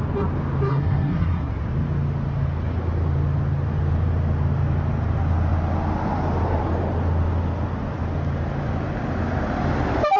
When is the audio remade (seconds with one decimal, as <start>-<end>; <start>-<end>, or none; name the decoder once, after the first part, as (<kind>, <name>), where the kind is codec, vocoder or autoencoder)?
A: 0.7-1.5 (codec, SNAC)